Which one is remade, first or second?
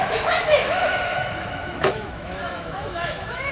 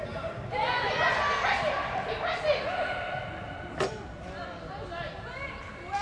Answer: first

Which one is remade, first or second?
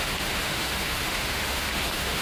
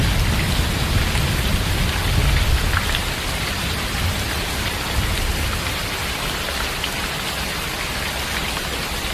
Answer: first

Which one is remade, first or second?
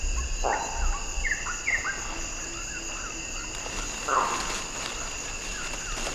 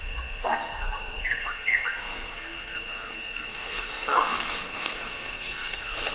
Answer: second